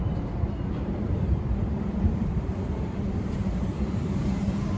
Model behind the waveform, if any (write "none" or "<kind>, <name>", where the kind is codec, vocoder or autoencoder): vocoder, BigVGAN v2